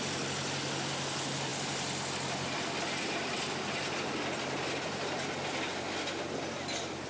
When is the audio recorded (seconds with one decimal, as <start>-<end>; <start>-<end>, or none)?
0.0-7.1